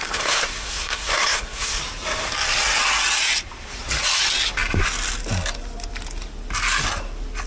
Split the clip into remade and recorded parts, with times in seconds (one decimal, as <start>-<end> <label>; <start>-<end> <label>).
0.0-1.8 remade; 1.8-7.5 recorded